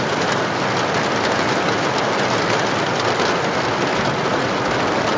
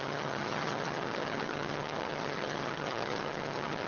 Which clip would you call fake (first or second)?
second